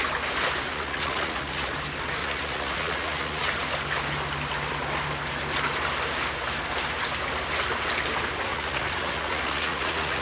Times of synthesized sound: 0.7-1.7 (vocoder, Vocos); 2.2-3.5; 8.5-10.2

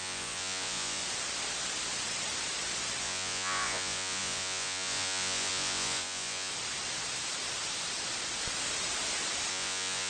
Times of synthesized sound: 0.0-1.0 (vocoder, Vocos); 3.0-6.5; 9.5-10.1

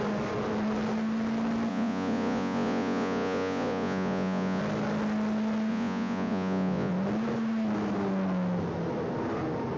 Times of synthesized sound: 1.7-4.6 (vocoder, Vocos); 5.7-6.9

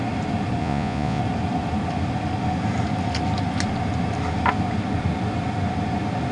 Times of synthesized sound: 0.6-1.2 (vocoder, Vocos)

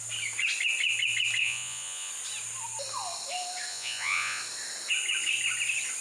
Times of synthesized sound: 1.4-2.1 (vocoder, Vocos); 3.7-4.4

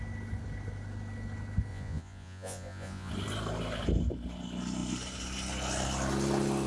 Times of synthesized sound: 1.7-3.1 (vocoder, Vocos)

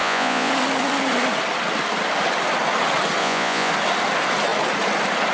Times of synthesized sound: 0.0-0.5 (vocoder, Vocos); 3.2-3.7